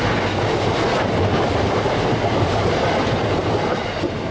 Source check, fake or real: real